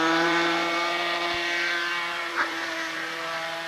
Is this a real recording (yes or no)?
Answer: no